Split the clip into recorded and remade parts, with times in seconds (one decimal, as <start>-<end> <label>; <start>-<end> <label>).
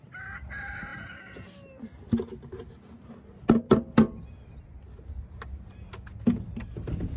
0.0-7.2 recorded